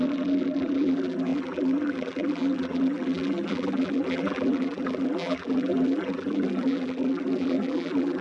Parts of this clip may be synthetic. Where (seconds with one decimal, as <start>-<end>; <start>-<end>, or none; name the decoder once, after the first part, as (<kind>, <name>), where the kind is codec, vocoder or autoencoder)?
0.0-8.2 (vocoder, BigVGAN v2)